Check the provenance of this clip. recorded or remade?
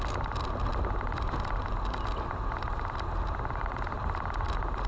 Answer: recorded